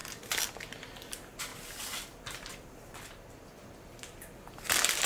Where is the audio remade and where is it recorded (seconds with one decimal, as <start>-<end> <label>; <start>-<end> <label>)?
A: 0.0-5.1 recorded